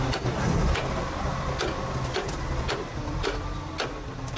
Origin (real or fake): real